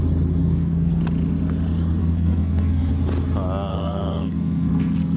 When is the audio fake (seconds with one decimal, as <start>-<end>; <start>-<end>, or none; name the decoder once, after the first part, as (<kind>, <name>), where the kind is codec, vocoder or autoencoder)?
0.4-1.0 (codec, SNAC); 2.0-2.9; 3.7-5.2